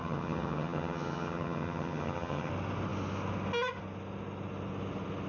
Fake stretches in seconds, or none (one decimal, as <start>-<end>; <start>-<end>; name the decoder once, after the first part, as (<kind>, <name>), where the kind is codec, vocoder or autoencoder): 0.0-2.5 (vocoder, HiFi-GAN)